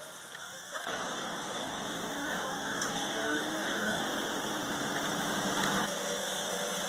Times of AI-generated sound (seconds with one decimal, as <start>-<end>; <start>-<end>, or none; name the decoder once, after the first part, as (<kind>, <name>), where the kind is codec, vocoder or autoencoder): 0.4-4.0 (codec, DAC); 5.8-6.5